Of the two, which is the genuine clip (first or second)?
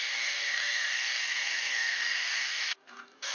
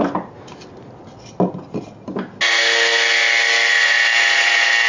second